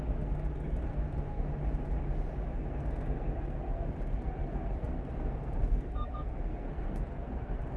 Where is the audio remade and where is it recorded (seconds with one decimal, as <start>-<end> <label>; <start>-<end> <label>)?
0.0-1.5 remade; 1.5-2.5 recorded; 2.5-7.8 remade